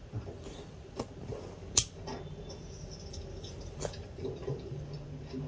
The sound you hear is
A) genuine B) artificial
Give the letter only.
A